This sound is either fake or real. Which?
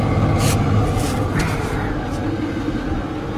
real